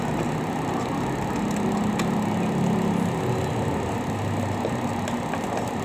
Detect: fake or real real